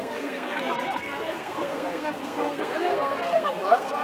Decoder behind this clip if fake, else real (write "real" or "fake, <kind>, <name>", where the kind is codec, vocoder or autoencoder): fake, codec, SNAC